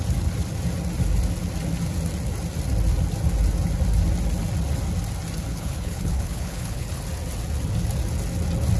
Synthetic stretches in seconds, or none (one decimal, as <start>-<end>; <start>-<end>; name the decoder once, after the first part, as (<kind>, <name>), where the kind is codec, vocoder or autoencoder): 5.5-7.0 (codec, HILCodec)